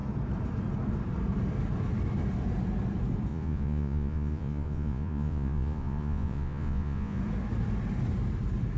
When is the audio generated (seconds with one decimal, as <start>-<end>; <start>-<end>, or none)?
3.3-7.2